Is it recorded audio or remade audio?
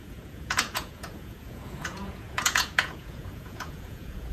remade